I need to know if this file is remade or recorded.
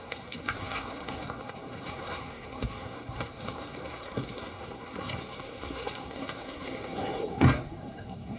remade